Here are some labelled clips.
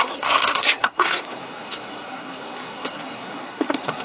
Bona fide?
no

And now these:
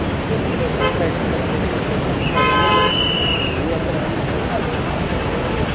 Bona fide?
yes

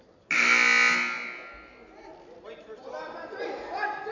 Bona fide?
yes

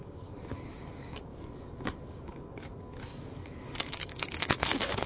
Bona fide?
no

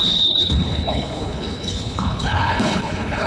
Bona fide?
no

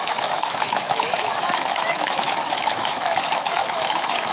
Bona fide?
no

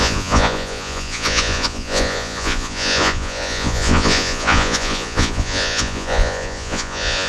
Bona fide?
no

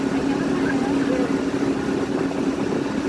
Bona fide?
yes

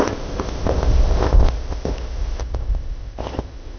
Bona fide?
no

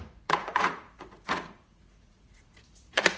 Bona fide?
no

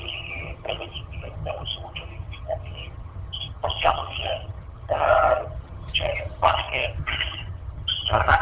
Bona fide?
no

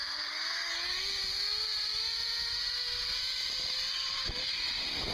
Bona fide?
yes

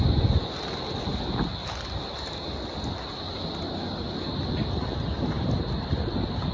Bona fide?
yes